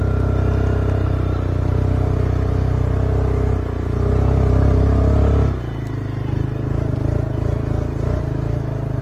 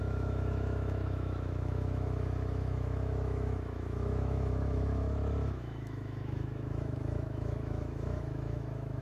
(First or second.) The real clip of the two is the first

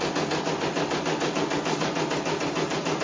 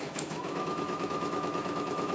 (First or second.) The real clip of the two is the first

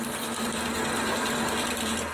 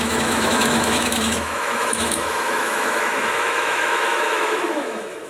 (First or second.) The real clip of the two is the first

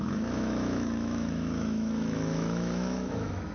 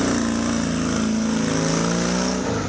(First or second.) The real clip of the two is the second